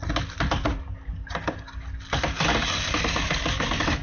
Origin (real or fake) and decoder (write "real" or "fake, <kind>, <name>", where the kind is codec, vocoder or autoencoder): real